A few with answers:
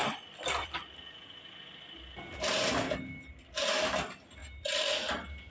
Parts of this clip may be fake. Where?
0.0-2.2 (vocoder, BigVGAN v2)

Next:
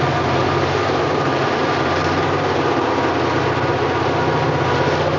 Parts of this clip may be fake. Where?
0.4-2.8 (vocoder, BigVGAN v2)

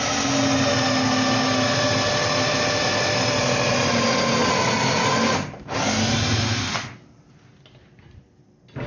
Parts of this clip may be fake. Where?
none

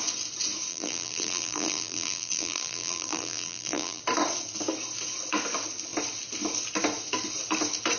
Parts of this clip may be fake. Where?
0.7-4.0 (vocoder, BigVGAN v2)